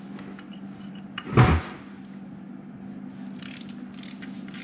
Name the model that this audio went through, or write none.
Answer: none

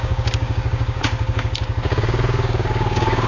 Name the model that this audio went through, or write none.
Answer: codec, DAC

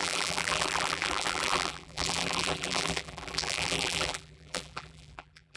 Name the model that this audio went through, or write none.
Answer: vocoder, BigVGAN v2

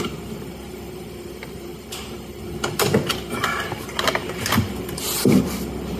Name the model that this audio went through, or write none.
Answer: vocoder, BigVGAN v2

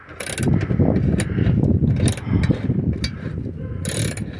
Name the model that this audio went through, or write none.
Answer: none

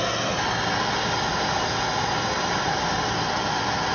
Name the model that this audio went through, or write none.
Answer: none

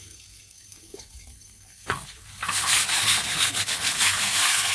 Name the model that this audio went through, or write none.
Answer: codec, SNAC